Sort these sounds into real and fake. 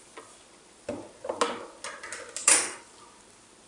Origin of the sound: real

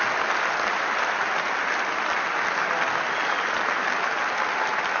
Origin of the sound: real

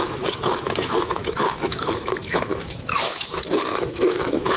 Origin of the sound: fake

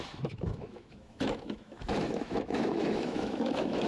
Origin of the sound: fake